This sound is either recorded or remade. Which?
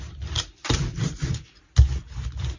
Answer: recorded